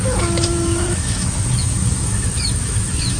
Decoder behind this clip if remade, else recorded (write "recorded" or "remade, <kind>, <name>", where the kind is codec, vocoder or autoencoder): remade, autoencoder, DAC-VAE